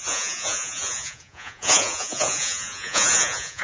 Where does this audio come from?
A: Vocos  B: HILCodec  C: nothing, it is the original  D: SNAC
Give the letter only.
A